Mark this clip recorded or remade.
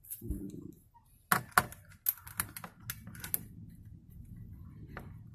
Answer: recorded